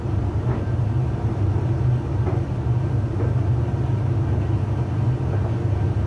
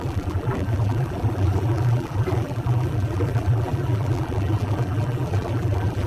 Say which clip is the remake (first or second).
second